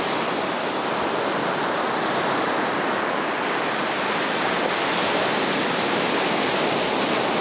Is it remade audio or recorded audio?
recorded